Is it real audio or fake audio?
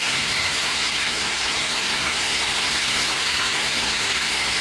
fake